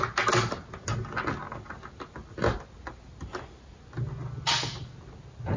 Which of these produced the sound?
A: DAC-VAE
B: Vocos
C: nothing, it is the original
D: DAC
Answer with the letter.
C